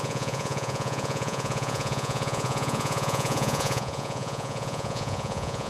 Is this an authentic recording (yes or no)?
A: no